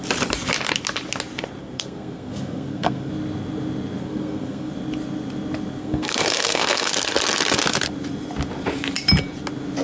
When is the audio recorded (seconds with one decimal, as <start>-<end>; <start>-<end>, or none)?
0.0-1.6; 3.1-4.0; 4.7-5.8; 6.9-9.8